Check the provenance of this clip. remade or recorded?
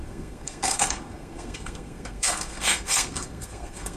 remade